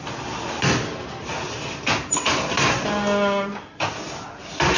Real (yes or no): yes